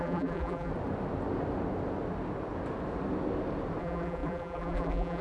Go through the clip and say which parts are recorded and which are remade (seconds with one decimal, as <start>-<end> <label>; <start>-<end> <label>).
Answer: 0.0-0.7 remade; 0.7-3.8 recorded; 3.8-5.2 remade